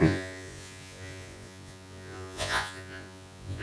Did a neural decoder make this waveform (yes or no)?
yes